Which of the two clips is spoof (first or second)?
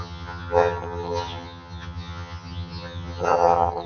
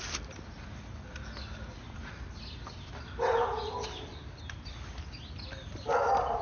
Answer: first